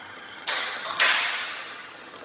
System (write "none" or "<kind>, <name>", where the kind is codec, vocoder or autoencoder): vocoder, HiFi-GAN